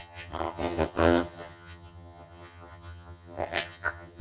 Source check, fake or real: fake